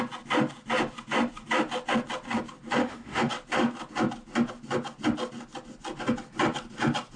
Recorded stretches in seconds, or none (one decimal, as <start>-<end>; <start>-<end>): 0.0-2.8; 3.3-7.2